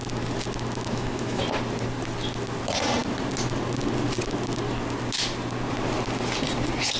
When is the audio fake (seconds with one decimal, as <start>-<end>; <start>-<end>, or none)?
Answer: 0.9-1.4